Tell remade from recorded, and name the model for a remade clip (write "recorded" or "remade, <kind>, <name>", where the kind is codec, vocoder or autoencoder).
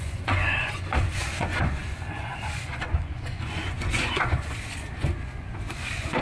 remade, vocoder, Vocos